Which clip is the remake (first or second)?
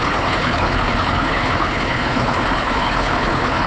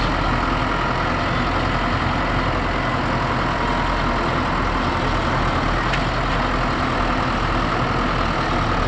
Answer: first